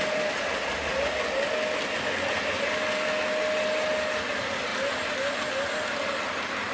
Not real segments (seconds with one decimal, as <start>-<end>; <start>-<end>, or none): none